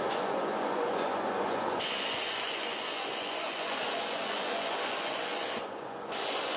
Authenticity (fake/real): fake